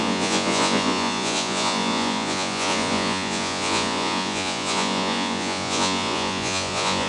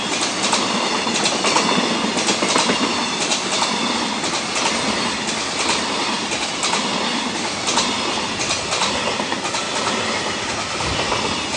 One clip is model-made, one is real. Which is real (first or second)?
second